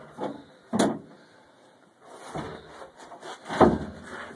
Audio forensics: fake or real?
real